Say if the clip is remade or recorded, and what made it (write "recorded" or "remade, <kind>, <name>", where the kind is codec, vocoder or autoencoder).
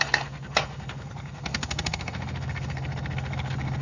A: remade, codec, SNAC